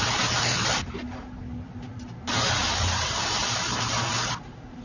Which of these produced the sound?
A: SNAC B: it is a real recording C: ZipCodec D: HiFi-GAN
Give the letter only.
B